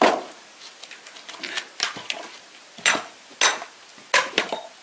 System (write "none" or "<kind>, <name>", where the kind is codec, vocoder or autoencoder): none